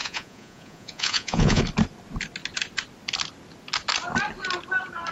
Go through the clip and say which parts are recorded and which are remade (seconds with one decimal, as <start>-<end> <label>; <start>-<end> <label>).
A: 0.0-1.6 remade; 1.6-5.1 recorded